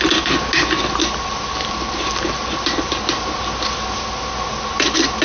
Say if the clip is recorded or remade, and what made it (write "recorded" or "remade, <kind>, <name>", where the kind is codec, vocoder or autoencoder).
recorded